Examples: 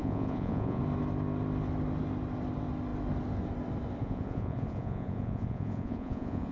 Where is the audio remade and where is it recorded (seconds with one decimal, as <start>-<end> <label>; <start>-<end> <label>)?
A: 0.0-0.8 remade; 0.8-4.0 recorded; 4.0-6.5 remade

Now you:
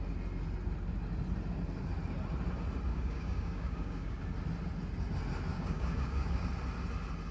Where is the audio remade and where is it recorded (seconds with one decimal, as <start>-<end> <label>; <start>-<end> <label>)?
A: 0.0-2.9 recorded; 2.9-4.2 remade; 4.2-5.5 recorded; 5.5-6.5 remade; 6.5-7.3 recorded

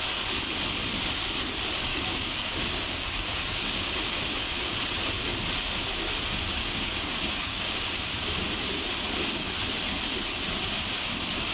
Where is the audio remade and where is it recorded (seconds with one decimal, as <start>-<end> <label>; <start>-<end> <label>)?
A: 0.0-1.9 recorded; 1.9-3.9 remade; 3.9-6.6 recorded; 6.6-7.8 remade; 7.8-11.5 recorded

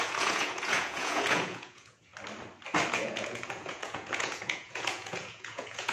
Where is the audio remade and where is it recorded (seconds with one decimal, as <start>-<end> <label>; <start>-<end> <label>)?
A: 0.0-2.1 remade; 2.1-2.9 recorded; 2.9-5.9 remade

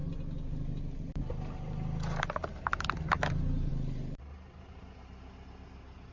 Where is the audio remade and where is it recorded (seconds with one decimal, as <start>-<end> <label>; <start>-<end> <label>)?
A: 0.0-6.1 recorded